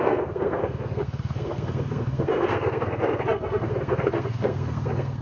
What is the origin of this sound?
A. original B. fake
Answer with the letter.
B